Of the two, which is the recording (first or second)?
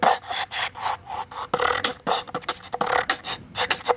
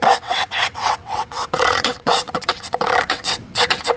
first